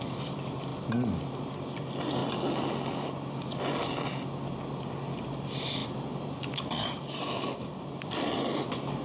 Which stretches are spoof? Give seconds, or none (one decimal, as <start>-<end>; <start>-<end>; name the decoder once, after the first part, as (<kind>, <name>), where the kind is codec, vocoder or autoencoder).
0.0-0.7 (vocoder, BigVGAN v2); 1.3-2.2; 5.2-9.0